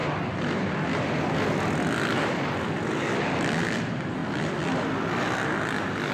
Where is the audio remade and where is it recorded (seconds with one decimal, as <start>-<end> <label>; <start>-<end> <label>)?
0.0-6.1 recorded